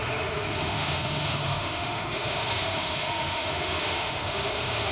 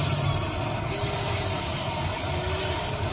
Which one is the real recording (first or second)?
second